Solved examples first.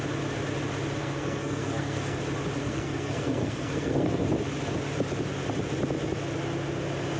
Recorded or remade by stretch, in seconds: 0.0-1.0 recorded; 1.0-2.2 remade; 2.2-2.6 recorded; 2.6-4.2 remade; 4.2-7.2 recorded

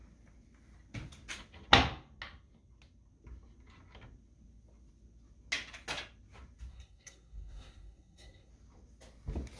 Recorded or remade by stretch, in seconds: 0.0-6.7 recorded; 6.7-8.5 remade; 8.5-9.6 recorded

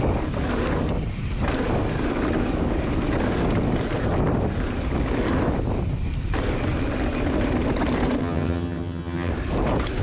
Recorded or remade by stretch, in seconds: 0.0-8.2 recorded; 8.2-9.3 remade; 9.3-10.0 recorded

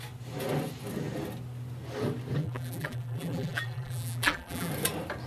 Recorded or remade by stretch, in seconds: 0.0-2.4 recorded; 2.4-4.7 remade; 4.7-5.3 recorded

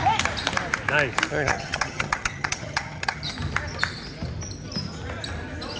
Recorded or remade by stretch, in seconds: 0.0-1.3 recorded; 1.3-3.3 remade; 3.3-5.8 recorded

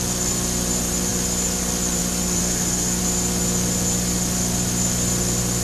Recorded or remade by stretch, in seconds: 0.0-2.4 recorded; 2.4-3.0 remade; 3.0-5.6 recorded